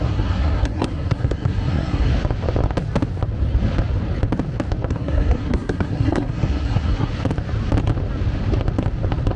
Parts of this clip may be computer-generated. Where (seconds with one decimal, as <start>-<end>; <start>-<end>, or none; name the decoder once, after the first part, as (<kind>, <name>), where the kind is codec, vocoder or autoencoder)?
0.0-2.1 (codec, SNAC); 4.9-7.1